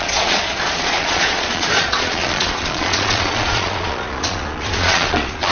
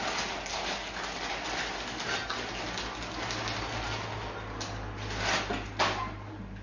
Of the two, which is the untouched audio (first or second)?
second